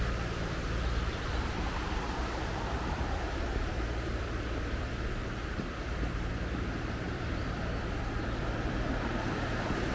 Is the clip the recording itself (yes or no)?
no